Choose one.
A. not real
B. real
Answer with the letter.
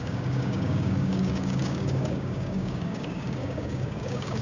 A